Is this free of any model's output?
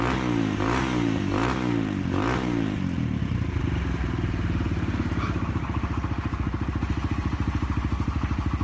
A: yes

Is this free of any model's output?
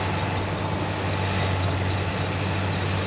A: yes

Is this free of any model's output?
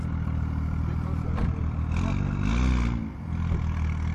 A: yes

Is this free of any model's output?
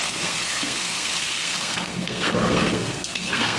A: no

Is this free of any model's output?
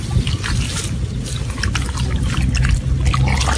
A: yes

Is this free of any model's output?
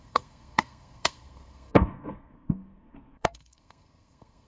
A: no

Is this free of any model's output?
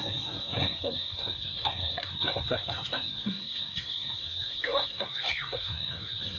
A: no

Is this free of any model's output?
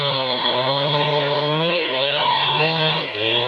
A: no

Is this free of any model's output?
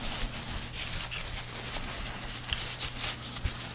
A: yes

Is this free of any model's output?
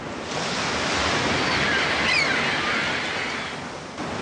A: yes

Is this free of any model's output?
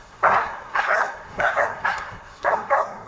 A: no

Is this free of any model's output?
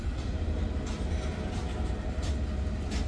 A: yes